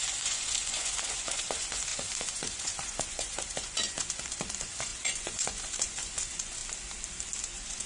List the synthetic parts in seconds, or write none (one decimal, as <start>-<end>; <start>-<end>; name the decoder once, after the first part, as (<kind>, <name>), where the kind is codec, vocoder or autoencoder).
0.0-6.6 (vocoder, Vocos); 7.4-7.9